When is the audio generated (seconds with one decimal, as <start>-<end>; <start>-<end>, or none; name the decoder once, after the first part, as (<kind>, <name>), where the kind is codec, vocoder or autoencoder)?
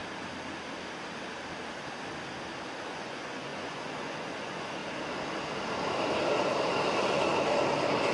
2.8-4.8 (vocoder, Vocos)